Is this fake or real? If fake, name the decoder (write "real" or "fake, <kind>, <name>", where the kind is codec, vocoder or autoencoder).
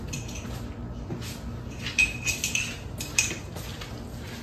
real